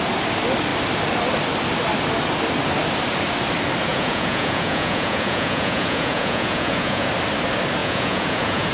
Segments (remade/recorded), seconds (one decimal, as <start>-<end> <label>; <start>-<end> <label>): 0.0-3.9 recorded; 3.9-7.1 remade; 7.1-7.8 recorded; 7.8-8.7 remade